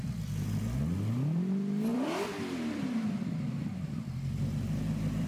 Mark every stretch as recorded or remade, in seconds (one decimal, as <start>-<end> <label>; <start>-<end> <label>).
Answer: 0.0-1.9 recorded; 1.9-5.3 remade